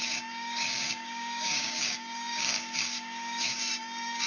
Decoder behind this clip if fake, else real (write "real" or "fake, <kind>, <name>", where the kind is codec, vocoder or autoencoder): fake, codec, DAC